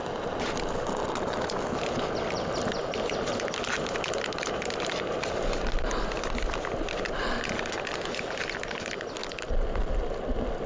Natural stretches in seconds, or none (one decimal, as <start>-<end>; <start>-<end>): 0.0-10.7